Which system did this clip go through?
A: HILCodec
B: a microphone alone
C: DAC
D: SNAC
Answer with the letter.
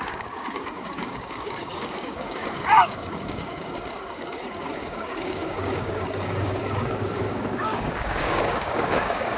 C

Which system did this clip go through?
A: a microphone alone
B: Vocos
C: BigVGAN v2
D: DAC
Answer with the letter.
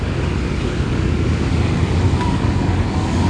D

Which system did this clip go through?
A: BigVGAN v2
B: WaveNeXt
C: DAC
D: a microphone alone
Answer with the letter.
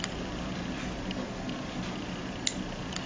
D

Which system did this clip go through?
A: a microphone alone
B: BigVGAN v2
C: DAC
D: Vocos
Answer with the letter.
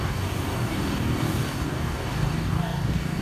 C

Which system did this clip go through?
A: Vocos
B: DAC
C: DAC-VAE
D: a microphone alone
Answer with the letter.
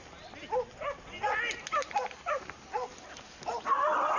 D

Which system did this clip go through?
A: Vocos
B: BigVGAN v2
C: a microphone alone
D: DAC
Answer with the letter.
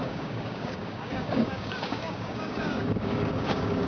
D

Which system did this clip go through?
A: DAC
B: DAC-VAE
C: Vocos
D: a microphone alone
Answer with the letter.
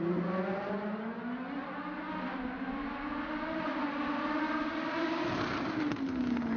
D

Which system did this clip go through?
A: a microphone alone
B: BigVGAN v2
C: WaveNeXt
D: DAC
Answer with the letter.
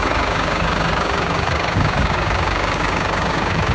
D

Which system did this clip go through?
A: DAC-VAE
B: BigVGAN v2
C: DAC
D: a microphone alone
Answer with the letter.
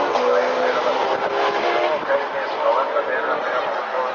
D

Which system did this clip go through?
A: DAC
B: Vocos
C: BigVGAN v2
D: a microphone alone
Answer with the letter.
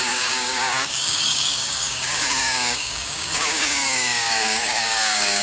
A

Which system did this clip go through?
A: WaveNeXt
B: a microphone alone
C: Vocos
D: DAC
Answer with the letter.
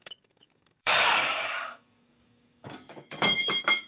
D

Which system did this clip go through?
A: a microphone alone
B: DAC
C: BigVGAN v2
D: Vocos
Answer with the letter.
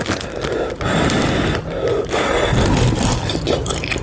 A